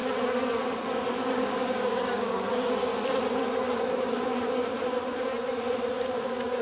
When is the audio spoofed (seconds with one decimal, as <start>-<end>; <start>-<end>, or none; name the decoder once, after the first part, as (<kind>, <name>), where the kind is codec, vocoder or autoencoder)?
1.3-2.9 (codec, DAC); 6.0-6.6